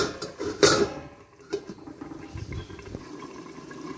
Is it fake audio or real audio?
fake